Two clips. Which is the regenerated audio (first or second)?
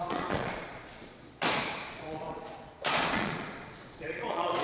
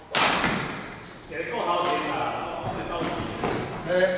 first